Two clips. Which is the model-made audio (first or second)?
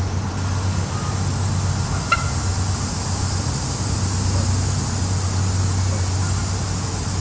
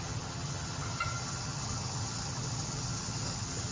second